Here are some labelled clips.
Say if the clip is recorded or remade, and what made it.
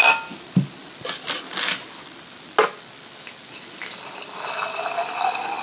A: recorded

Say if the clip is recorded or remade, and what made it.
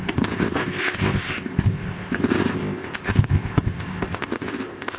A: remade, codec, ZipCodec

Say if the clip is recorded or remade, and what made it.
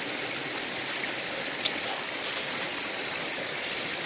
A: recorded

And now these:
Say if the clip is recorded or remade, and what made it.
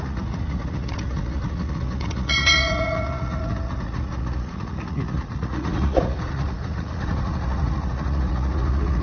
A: remade, vocoder, Vocos